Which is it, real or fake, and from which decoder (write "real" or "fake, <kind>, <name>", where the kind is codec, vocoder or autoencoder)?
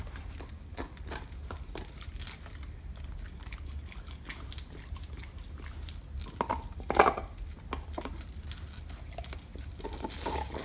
real